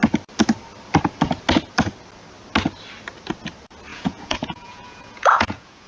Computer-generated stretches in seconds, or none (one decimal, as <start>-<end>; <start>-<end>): 3.9-5.9